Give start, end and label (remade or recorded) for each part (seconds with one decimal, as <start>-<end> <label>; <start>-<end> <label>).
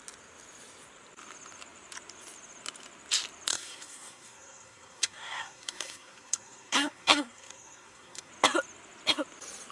0.0-3.5 recorded; 3.5-8.3 remade; 8.3-9.7 recorded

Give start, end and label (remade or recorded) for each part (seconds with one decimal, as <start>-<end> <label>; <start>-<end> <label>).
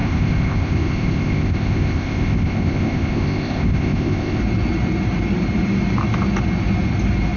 0.0-4.4 remade; 4.4-7.4 recorded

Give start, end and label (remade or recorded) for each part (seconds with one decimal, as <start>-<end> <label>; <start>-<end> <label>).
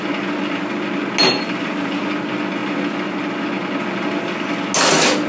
0.0-1.2 recorded; 1.2-2.0 remade; 2.0-5.3 recorded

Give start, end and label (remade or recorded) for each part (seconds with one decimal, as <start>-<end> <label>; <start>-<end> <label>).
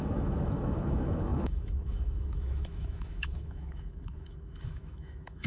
0.0-5.5 remade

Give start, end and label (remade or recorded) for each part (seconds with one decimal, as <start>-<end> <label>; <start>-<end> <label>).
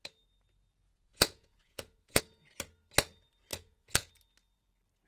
0.0-0.9 recorded; 0.9-2.2 remade; 2.2-3.5 recorded; 3.5-4.1 remade; 4.1-5.1 recorded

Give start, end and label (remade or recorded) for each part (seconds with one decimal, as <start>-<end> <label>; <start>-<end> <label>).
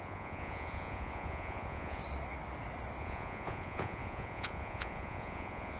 0.0-2.0 remade; 2.0-3.0 recorded; 3.0-5.8 remade